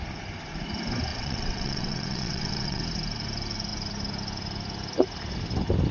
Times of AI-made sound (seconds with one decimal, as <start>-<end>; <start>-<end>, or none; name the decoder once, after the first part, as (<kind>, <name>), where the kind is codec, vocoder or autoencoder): 1.1-2.8 (vocoder, WaveNeXt)

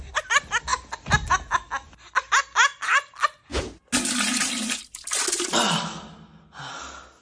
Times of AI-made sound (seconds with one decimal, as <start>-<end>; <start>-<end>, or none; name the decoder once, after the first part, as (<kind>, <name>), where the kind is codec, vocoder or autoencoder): none

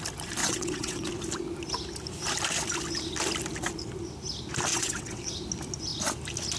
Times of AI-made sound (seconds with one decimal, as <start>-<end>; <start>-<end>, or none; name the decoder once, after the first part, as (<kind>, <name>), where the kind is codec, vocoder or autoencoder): 0.4-1.1 (vocoder, WaveNeXt); 4.7-5.3

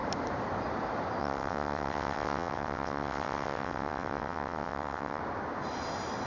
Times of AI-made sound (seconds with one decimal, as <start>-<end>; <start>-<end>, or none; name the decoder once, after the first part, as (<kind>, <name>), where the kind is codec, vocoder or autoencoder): 1.2-5.2 (vocoder, WaveNeXt)

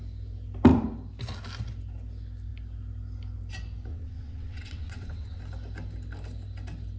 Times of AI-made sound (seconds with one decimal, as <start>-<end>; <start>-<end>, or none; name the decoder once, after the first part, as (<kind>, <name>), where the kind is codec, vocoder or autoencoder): 3.9-5.4 (vocoder, WaveNeXt)